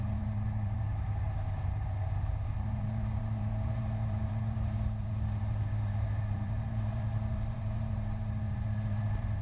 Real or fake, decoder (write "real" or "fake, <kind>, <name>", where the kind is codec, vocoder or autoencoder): fake, vocoder, BigVGAN v2